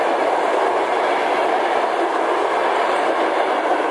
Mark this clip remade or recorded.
recorded